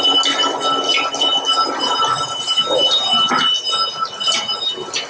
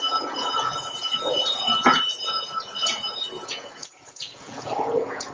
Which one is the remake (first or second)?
second